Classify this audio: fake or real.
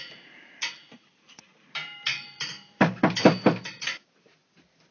fake